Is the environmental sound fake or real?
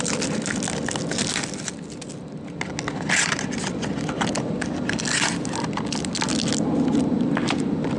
real